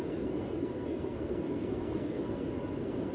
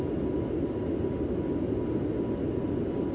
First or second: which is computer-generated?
first